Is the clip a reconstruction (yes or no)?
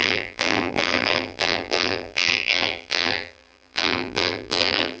yes